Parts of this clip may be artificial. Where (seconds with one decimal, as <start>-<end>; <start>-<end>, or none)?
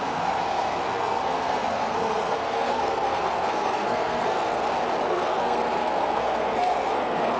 0.0-4.6; 5.1-7.4